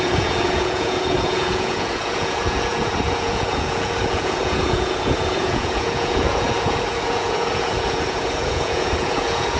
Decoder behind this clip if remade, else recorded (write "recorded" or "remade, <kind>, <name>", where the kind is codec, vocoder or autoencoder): remade, vocoder, Vocos